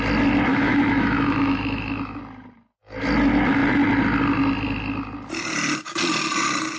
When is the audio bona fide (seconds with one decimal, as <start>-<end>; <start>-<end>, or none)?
0.0-0.5; 2.2-6.8